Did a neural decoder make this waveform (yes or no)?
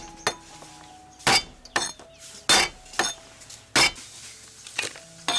no